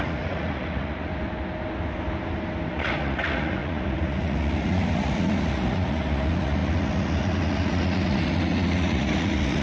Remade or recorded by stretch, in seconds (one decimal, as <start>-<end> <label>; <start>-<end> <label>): 0.0-1.1 remade; 1.1-2.7 recorded; 2.7-9.6 remade